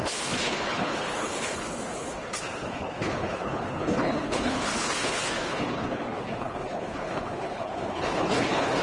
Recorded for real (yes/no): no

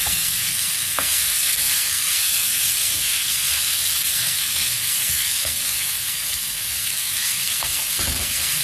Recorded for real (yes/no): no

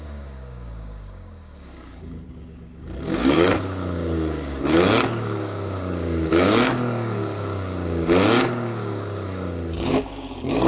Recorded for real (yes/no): no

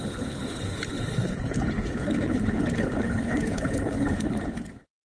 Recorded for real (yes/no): no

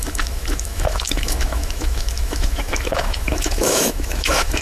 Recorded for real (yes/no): no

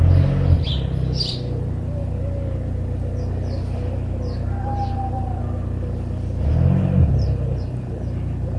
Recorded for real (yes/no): yes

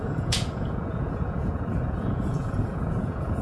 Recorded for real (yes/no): no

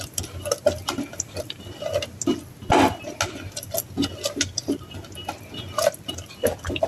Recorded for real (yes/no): yes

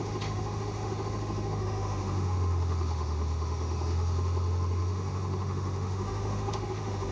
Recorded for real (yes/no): no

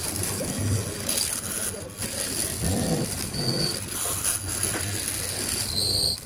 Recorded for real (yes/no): yes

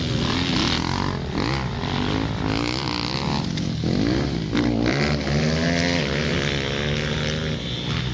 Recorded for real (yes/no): yes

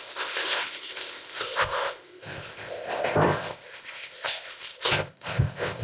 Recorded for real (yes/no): no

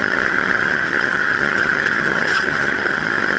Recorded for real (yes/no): no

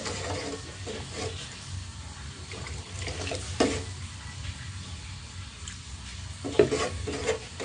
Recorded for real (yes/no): yes